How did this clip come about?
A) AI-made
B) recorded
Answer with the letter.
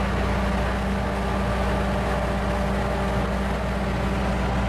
B